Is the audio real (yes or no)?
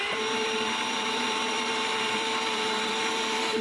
no